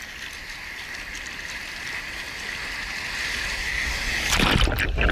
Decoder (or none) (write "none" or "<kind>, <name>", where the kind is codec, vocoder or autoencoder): none